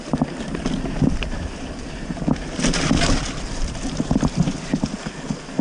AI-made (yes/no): no